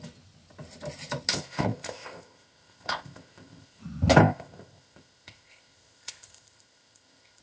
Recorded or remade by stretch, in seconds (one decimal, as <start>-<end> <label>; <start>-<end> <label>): 0.0-1.3 recorded; 1.3-3.8 remade; 3.8-4.2 recorded; 4.2-7.4 remade